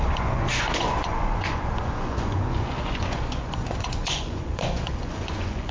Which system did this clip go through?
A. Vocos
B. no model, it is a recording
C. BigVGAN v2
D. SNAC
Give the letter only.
A